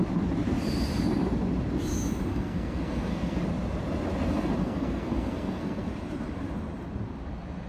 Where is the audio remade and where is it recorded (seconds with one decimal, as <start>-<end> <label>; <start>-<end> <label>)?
0.0-2.3 recorded; 2.3-3.4 remade; 3.4-4.6 recorded; 4.6-5.9 remade; 5.9-7.7 recorded